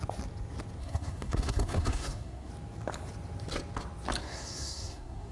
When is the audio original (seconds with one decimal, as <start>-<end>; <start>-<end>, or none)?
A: 0.0-0.8; 2.5-4.2